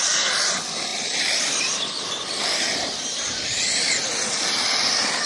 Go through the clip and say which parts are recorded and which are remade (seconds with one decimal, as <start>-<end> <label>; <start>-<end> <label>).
0.0-5.3 recorded